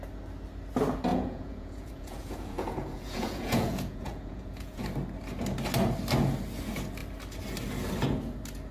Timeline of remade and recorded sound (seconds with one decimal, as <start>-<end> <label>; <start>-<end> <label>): 0.0-1.1 recorded; 1.1-4.8 remade; 4.8-8.7 recorded